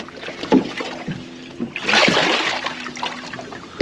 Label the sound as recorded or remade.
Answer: recorded